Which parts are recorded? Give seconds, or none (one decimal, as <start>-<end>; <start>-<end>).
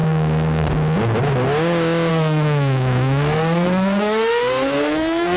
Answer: 0.7-2.1